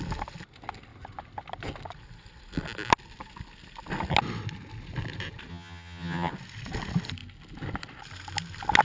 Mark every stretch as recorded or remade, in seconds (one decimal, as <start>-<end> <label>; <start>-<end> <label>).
0.0-5.5 recorded; 5.5-6.3 remade; 6.3-8.8 recorded